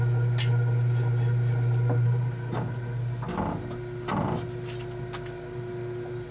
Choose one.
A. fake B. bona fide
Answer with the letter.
B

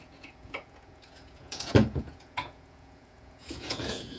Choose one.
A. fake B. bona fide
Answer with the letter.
A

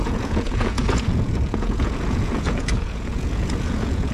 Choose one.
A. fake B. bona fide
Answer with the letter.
A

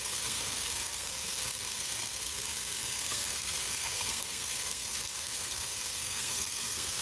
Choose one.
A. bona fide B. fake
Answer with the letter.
B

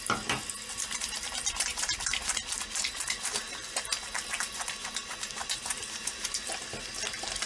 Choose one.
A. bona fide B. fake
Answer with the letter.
A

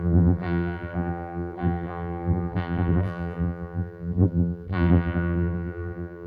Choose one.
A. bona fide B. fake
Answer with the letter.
B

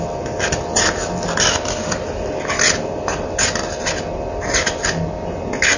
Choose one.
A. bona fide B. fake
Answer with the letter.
A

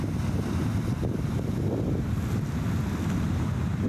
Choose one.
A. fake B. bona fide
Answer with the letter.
B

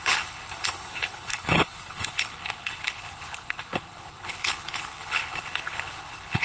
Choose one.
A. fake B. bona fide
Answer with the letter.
A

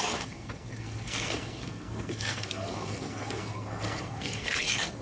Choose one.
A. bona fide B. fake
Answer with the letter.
B